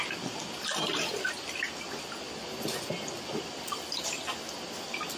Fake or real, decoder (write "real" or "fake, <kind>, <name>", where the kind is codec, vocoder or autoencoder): real